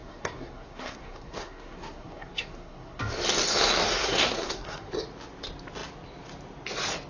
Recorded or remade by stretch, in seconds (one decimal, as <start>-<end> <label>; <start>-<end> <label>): 0.0-3.0 remade; 3.0-4.0 recorded; 4.0-4.9 remade; 4.9-7.1 recorded